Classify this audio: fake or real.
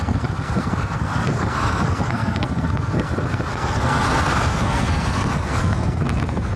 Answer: fake